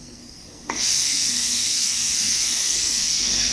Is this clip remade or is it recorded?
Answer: remade